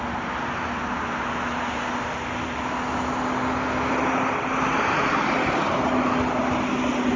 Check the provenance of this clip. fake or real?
real